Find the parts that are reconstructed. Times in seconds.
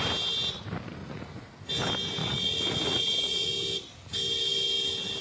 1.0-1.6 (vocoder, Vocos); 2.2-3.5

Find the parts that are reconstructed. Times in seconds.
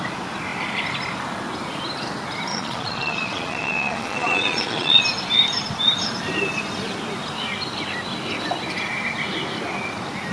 2.5-5.0 (vocoder, Vocos)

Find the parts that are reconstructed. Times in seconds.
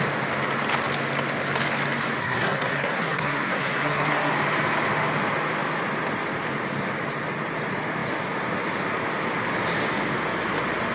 2.2-4.3 (codec, SNAC)